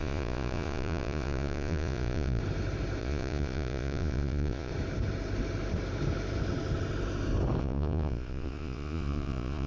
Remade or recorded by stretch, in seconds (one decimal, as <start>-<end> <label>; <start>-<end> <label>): 0.0-2.4 remade; 2.4-3.0 recorded; 3.0-4.7 remade; 4.7-7.6 recorded; 7.6-9.7 remade